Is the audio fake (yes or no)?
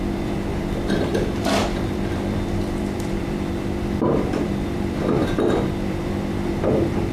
yes